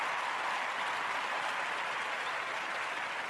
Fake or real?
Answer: real